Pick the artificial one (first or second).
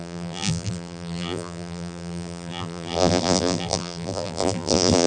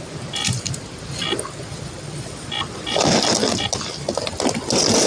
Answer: first